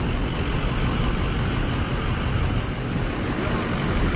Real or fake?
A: real